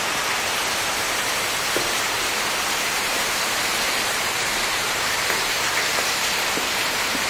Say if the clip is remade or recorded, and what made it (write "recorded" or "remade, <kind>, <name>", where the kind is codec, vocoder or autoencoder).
remade, vocoder, BigVGAN v2